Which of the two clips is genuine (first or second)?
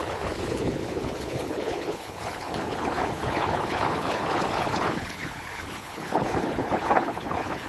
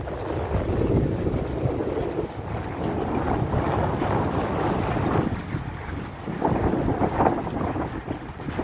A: second